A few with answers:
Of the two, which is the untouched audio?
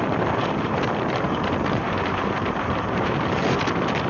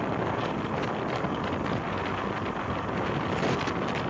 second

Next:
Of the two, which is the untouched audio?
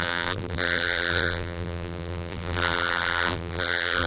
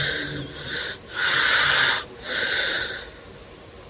second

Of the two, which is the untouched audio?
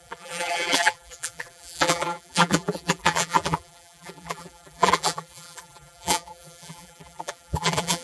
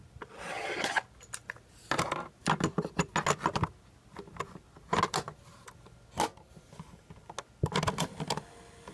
second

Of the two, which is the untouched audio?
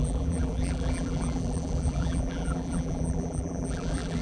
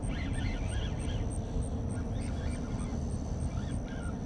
second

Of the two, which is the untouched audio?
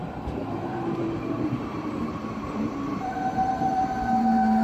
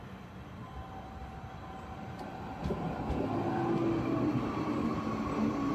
second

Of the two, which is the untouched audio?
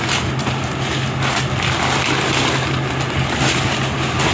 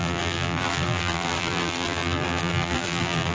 first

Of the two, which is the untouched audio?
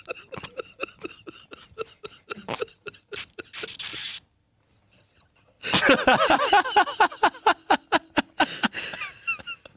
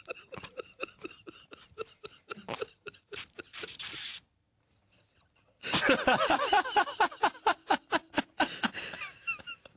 first